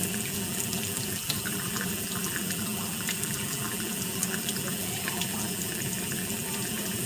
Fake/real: fake